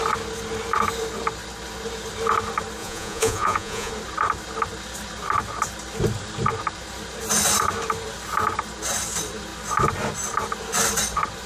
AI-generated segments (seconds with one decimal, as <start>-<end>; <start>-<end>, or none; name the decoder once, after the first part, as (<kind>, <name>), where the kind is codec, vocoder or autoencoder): 2.8-3.9 (vocoder, Vocos)